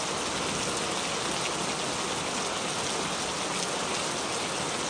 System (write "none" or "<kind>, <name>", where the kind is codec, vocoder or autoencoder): none